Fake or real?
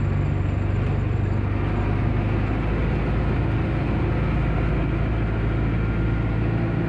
real